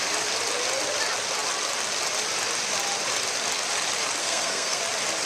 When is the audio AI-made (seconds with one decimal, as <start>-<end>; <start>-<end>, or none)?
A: 4.2-4.8